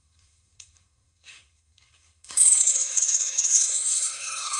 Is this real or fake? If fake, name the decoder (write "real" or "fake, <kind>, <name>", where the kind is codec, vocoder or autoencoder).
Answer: fake, codec, SNAC